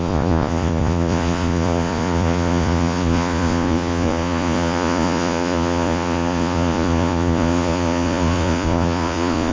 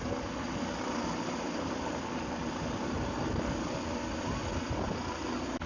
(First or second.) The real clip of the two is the second